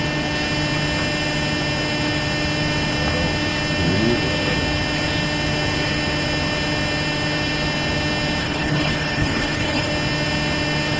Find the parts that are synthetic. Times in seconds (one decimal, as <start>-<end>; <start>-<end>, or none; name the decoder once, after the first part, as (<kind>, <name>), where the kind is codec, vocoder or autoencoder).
8.4-9.9 (codec, HILCodec)